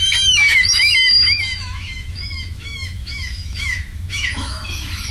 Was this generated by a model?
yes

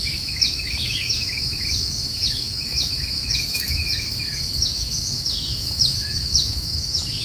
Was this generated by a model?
yes